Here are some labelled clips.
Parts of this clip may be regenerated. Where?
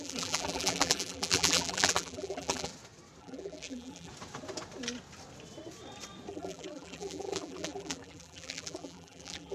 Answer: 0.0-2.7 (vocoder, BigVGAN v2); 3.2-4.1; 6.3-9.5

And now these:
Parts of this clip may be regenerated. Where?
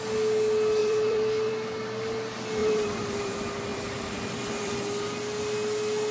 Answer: 0.8-1.5 (vocoder, BigVGAN v2); 2.6-3.3; 3.7-4.7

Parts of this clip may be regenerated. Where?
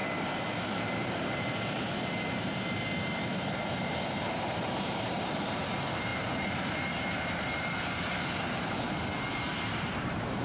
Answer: 0.6-10.4 (vocoder, BigVGAN v2)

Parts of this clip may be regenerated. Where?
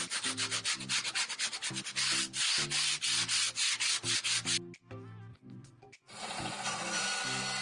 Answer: 5.3-7.0 (vocoder, Vocos)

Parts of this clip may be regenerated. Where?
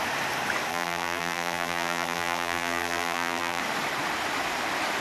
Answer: 0.7-3.6 (vocoder, BigVGAN v2)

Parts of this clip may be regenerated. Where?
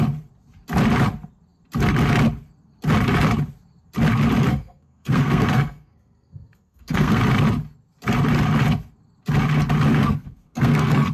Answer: 4.5-7.2 (codec, SNAC); 10.0-11.1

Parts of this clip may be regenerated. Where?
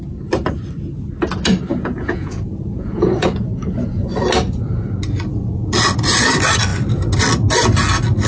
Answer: 1.7-3.3 (vocoder, Vocos)